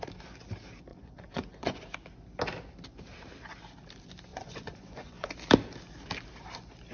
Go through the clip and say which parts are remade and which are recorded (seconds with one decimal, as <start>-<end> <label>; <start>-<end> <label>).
0.0-0.9 recorded; 0.9-1.8 remade; 1.8-4.3 recorded; 4.3-5.3 remade; 5.3-6.9 recorded